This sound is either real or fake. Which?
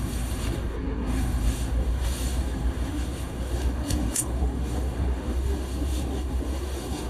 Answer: fake